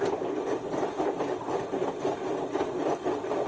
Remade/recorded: recorded